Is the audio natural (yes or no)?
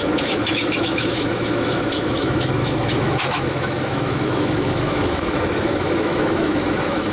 no